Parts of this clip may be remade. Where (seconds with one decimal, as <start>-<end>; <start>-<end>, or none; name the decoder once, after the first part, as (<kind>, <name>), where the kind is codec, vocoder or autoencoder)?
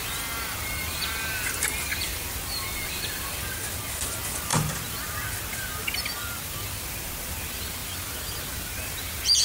1.9-2.6 (vocoder, BigVGAN v2); 7.8-9.0